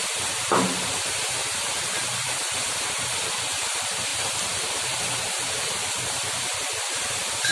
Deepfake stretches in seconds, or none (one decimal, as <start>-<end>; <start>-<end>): 1.4-1.9; 4.1-5.6